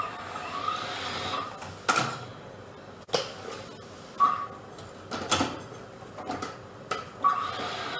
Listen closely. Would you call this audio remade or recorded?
recorded